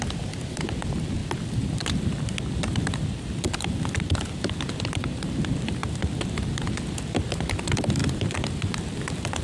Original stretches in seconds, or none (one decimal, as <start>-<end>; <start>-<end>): 0.0-1.2; 3.1-5.8; 6.5-8.0; 8.6-9.4